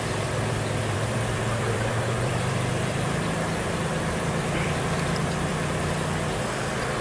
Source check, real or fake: fake